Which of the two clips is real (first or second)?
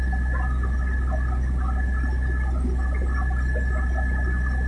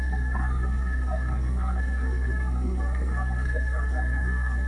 first